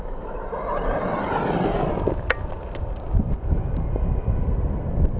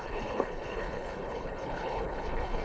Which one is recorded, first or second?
first